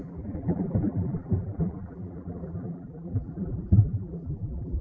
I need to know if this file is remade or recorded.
remade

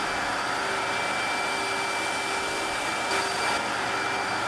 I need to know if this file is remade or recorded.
recorded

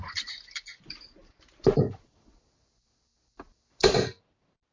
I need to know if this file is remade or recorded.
remade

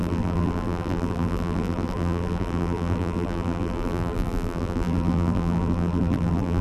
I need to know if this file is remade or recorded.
remade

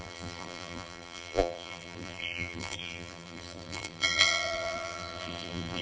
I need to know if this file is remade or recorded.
remade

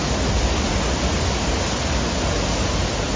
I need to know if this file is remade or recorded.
recorded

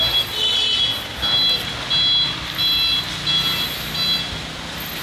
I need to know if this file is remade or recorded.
recorded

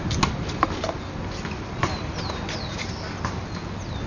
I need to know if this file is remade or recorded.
recorded